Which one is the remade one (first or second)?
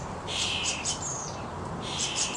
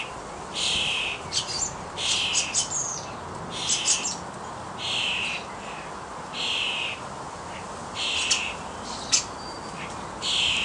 first